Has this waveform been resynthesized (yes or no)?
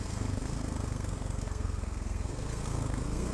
yes